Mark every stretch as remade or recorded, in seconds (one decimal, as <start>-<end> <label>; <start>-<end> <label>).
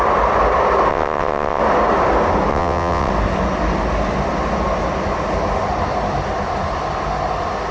0.0-0.9 recorded; 0.9-1.6 remade; 1.6-2.5 recorded; 2.5-3.1 remade; 3.1-7.7 recorded